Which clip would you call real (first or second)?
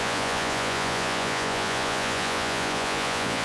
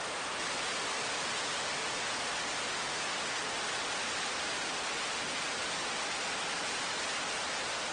second